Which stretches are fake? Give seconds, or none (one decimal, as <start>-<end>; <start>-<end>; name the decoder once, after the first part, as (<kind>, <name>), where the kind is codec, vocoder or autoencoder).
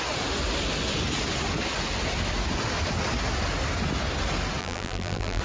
4.6-5.4 (vocoder, BigVGAN v2)